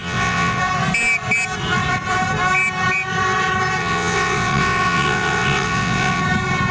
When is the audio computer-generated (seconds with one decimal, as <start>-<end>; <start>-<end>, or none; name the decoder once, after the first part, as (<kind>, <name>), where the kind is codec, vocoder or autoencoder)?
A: 0.0-0.6 (vocoder, WaveNeXt); 3.8-6.2